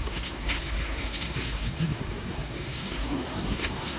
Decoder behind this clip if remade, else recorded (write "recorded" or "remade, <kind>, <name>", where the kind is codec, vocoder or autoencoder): remade, codec, SNAC